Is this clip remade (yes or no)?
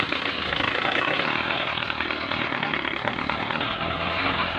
yes